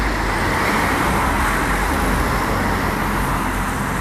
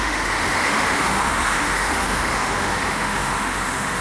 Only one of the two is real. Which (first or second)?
first